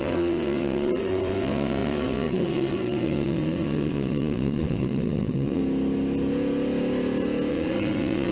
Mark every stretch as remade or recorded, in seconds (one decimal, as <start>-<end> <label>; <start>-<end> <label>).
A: 0.0-5.6 remade; 5.6-7.5 recorded; 7.5-8.3 remade